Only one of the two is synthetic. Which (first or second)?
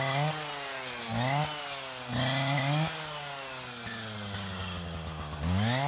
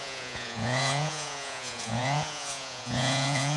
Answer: second